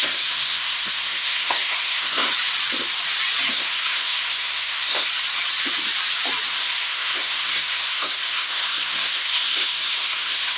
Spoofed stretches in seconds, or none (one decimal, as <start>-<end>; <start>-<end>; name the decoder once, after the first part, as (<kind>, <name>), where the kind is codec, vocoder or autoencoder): 0.0-2.3 (codec, SNAC); 3.5-5.1; 6.5-10.6